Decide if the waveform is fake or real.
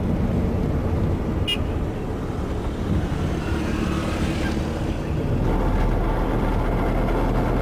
real